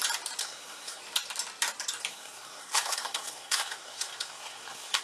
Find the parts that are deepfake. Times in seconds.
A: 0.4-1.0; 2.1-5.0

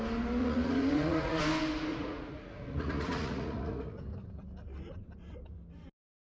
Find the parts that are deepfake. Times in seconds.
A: 0.4-1.4; 1.9-4.0

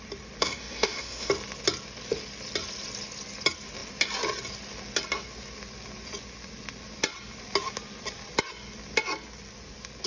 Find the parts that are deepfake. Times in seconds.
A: 0.4-1.3

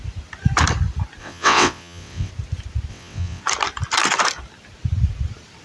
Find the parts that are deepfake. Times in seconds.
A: 1.2-2.3; 2.9-3.4

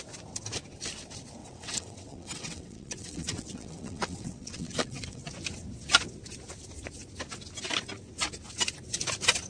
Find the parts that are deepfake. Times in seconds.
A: 1.4-5.3

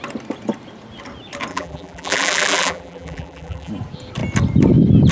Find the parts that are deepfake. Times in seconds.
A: 1.5-3.7

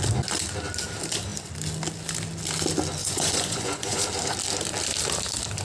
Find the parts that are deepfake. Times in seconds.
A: 3.0-4.0

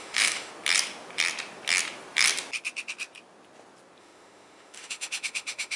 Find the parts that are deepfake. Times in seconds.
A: 0.0-0.5; 4.0-5.8